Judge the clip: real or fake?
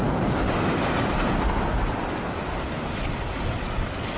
real